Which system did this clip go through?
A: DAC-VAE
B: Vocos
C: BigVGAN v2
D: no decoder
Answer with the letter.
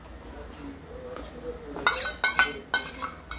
D